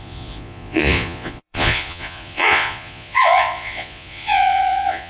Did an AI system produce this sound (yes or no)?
yes